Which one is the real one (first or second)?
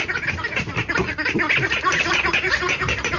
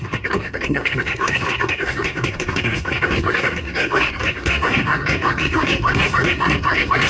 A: first